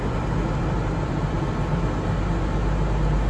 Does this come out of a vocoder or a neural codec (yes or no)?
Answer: no